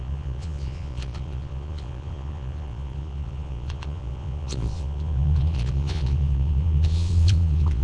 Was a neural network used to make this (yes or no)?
yes